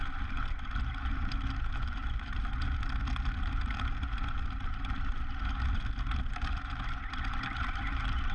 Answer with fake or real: real